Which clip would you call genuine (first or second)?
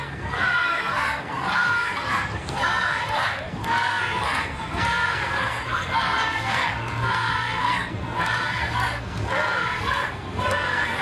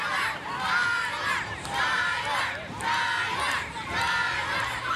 second